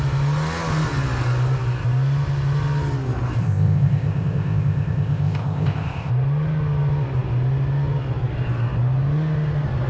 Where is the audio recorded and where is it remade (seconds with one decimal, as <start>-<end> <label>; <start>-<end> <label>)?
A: 0.0-3.4 recorded; 3.4-6.1 remade; 6.1-9.9 recorded